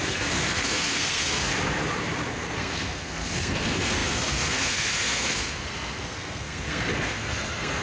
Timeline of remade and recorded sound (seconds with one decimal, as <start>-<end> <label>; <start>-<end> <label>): 0.0-1.5 remade; 1.5-2.3 recorded; 2.3-7.8 remade